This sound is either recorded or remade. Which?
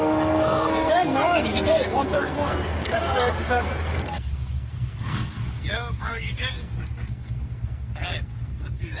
remade